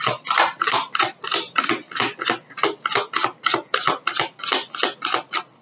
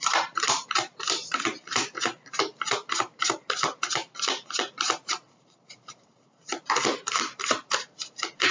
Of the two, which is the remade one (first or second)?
second